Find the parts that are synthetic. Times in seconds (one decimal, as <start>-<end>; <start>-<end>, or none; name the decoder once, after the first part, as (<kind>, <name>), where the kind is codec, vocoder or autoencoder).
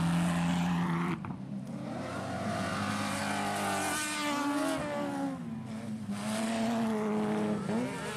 0.5-3.2 (vocoder, BigVGAN v2)